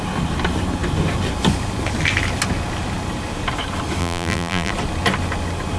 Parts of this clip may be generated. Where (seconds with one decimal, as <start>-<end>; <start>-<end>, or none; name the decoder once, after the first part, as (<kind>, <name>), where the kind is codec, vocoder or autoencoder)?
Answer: 4.0-4.7 (vocoder, BigVGAN v2)